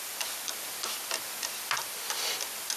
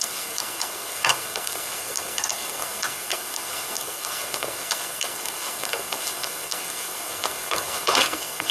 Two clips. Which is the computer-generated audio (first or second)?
second